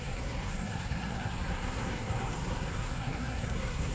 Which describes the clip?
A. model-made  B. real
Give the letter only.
A